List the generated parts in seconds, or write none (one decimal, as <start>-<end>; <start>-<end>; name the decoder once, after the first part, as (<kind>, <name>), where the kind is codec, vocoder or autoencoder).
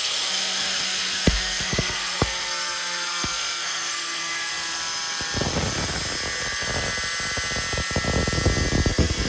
0.0-4.5 (codec, SNAC); 8.9-9.3